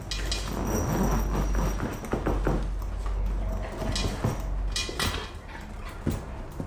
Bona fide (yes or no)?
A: yes